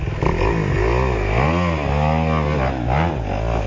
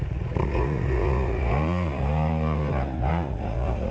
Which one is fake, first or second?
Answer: second